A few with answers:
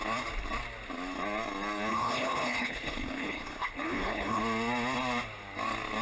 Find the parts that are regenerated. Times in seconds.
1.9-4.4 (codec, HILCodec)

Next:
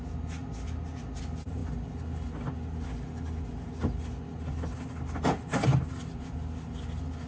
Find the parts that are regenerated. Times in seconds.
none

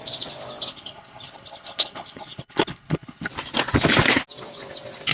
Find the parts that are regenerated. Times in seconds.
0.7-3.3 (codec, HILCodec)

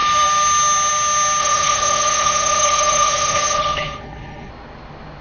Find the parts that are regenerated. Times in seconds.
1.4-4.5 (codec, HILCodec)

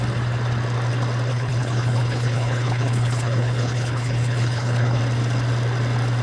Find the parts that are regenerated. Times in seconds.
1.3-5.0 (codec, HILCodec)